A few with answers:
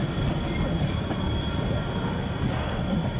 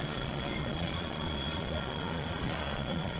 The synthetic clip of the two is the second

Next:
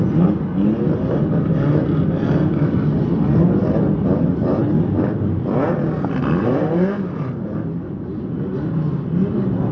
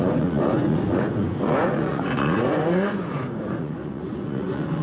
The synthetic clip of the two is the second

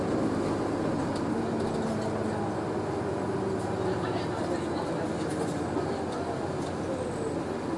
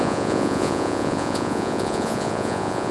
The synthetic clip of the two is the second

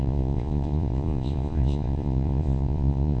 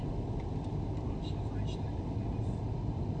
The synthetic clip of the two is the first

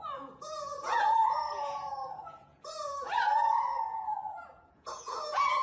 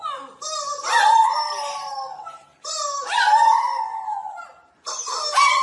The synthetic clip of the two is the first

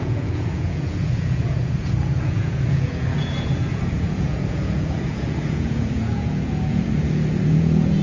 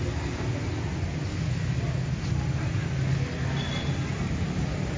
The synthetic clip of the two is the first